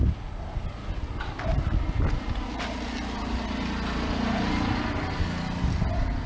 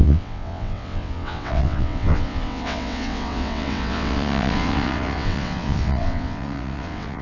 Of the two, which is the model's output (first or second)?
second